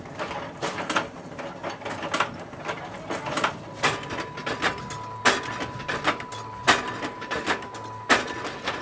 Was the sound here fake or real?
real